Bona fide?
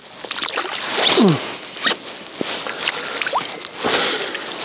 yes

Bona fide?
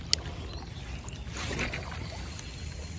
yes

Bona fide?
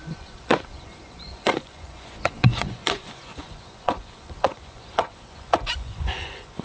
no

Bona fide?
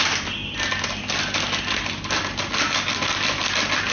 yes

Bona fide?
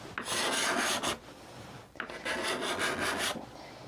yes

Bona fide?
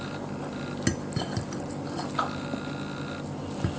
yes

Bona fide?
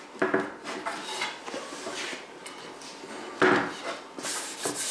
yes